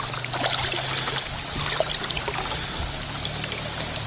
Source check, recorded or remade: recorded